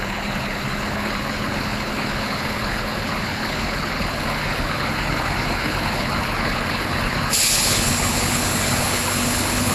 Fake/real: fake